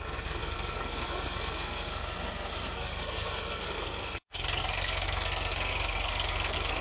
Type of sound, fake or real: fake